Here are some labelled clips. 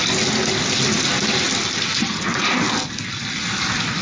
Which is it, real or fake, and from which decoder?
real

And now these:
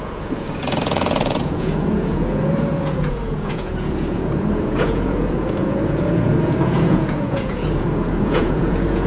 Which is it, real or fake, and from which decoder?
fake, vocoder, Vocos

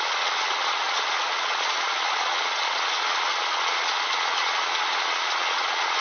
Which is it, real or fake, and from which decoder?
fake, vocoder, Vocos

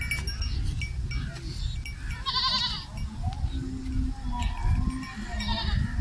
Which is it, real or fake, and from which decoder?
real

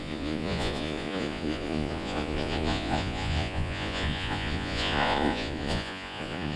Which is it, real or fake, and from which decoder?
fake, vocoder, Vocos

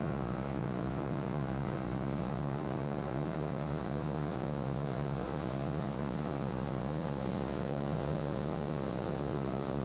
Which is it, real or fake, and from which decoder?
fake, vocoder, Vocos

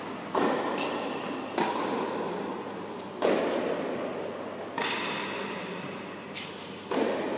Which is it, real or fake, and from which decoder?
real